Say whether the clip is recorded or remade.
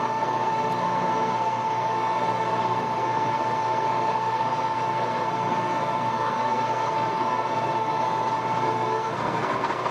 remade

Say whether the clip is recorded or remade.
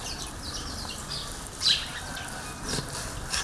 recorded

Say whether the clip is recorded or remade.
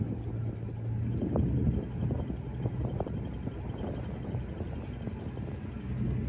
recorded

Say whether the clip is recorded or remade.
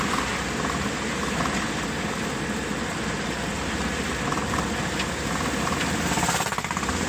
recorded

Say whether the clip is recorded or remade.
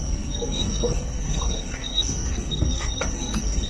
remade